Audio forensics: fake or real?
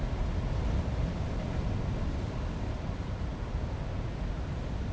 real